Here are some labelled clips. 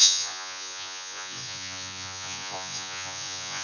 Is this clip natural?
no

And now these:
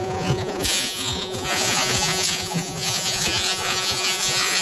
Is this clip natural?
no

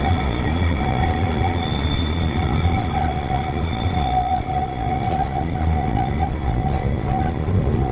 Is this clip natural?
no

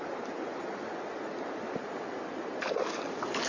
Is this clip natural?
yes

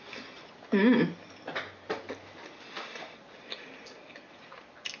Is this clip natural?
yes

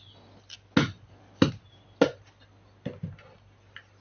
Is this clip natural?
yes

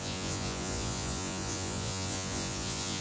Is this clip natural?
no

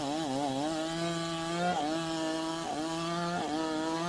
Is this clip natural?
yes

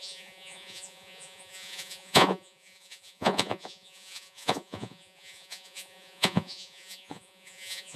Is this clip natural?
no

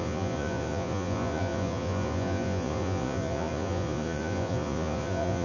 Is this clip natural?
no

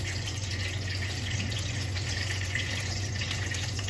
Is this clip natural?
no